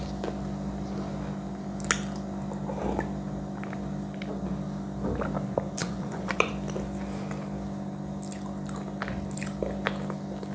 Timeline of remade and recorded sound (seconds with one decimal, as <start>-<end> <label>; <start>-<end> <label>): 0.0-5.8 recorded; 5.8-6.5 remade; 6.5-10.5 recorded